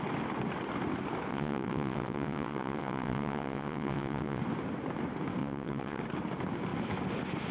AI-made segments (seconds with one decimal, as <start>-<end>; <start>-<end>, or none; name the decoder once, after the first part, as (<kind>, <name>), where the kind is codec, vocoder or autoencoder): 1.3-4.4 (vocoder, WaveNeXt); 5.4-6.0